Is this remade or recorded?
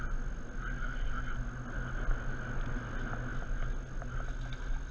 recorded